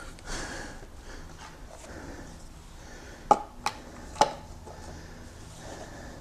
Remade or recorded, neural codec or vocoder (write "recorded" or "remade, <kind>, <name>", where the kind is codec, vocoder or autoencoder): recorded